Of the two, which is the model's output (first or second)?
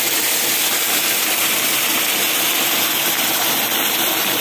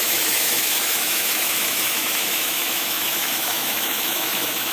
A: second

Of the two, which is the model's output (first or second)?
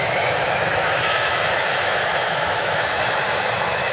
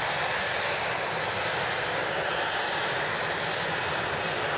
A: first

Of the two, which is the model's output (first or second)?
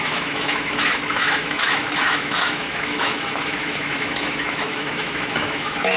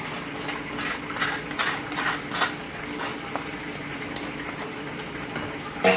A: first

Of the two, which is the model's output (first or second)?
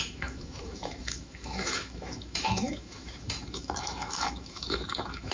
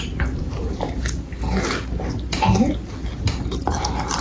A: first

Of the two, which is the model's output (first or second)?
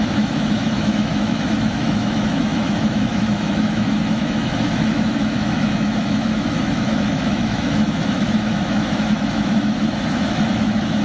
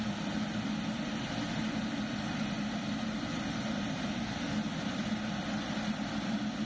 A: first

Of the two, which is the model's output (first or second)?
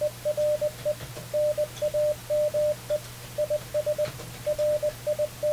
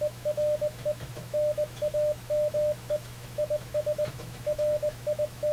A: second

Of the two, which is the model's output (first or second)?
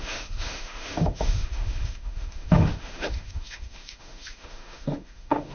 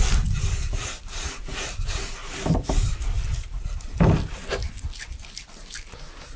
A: first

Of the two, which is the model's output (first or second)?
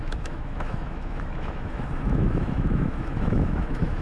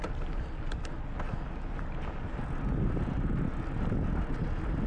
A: first